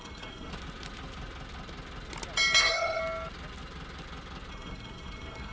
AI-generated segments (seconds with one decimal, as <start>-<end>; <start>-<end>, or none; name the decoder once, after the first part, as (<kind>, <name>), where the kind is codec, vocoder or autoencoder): 0.0-0.5 (codec, SNAC); 2.6-3.0; 4.5-5.5